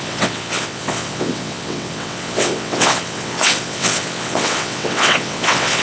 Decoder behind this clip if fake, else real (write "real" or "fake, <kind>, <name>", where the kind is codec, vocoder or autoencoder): fake, vocoder, WaveNeXt